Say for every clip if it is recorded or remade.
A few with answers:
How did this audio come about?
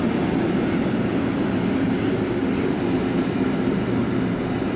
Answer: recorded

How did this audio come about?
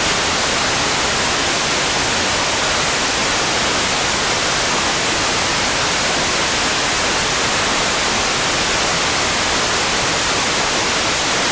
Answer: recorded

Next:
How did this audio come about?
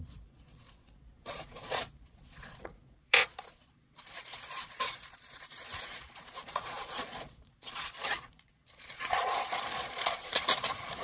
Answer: remade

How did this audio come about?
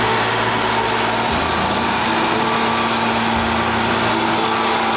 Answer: recorded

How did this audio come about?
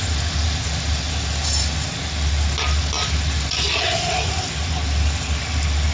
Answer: recorded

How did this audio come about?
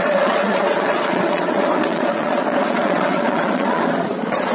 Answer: remade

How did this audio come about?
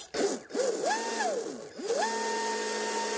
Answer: recorded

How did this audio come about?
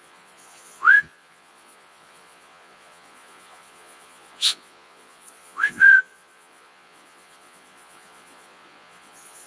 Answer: remade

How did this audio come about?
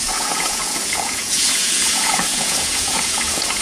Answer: remade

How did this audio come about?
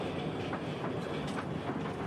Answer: recorded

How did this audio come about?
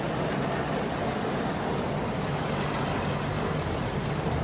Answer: recorded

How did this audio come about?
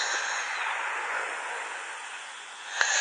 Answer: remade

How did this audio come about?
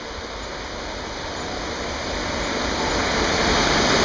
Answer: recorded